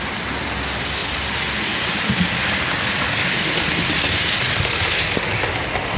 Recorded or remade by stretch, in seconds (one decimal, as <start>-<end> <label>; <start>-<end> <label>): 0.0-1.0 recorded; 1.0-4.6 remade; 4.6-6.0 recorded